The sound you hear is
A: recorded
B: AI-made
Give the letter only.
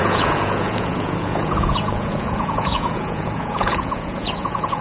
B